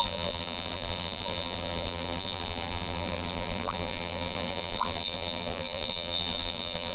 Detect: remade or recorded remade